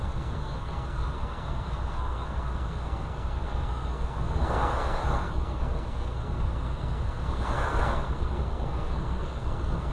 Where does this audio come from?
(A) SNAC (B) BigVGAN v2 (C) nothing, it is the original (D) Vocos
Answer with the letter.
A